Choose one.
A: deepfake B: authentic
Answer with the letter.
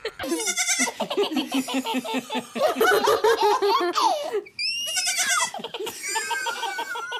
B